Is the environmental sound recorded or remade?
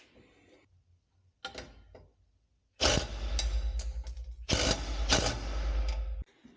recorded